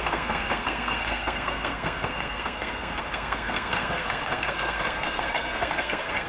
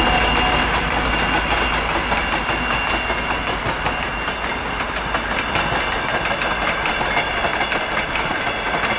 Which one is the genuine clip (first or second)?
second